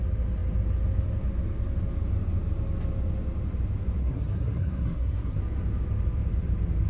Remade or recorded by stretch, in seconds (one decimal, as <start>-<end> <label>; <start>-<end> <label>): 0.0-4.0 recorded; 4.0-5.4 remade; 5.4-6.9 recorded